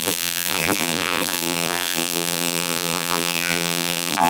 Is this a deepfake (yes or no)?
yes